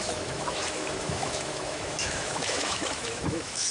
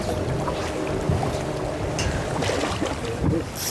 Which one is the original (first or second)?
second